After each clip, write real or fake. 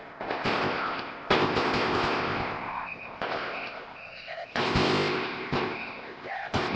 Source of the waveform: fake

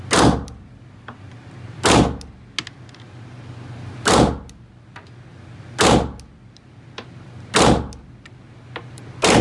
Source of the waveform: real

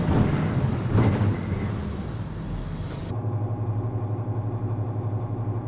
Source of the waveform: real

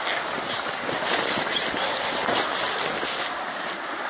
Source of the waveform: real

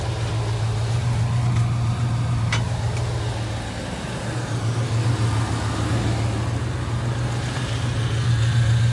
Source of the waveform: real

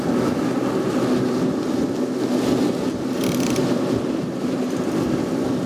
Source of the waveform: real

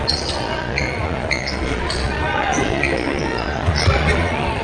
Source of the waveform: fake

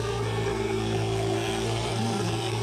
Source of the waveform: fake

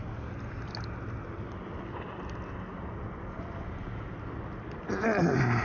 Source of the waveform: real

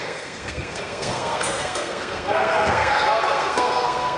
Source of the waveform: fake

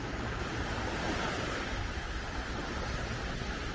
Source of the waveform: real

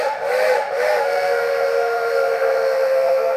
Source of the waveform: fake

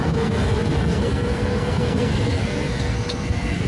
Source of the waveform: fake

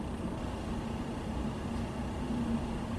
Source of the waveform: real